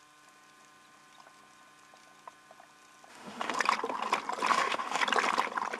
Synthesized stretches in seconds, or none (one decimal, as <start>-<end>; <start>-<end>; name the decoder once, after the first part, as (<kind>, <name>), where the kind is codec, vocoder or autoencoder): 3.1-3.6 (autoencoder, DAC-VAE); 4.5-5.0